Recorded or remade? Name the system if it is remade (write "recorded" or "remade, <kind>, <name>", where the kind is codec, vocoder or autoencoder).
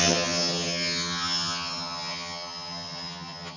remade, vocoder, HiFi-GAN